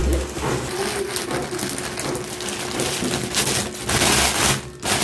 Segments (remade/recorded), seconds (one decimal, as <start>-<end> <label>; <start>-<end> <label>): 0.0-5.0 recorded